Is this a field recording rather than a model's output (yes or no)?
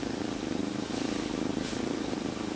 no